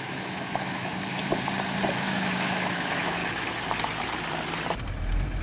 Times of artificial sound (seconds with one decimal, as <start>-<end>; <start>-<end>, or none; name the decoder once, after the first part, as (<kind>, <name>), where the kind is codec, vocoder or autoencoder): 0.0-1.3 (autoencoder, DAC-VAE); 1.9-3.2